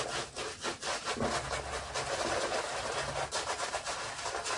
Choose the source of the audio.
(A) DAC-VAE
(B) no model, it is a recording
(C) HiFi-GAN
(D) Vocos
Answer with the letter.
B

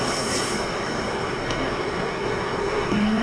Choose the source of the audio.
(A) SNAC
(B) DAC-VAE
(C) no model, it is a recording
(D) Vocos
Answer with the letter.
A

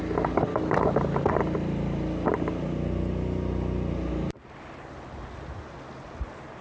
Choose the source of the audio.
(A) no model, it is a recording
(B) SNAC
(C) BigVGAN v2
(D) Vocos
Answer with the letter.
A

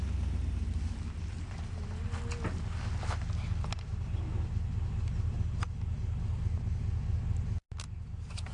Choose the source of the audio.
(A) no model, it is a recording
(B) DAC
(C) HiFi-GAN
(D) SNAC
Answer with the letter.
A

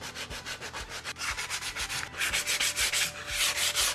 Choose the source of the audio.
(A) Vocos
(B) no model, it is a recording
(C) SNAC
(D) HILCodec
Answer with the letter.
B